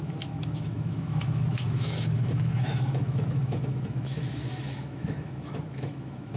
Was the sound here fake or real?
fake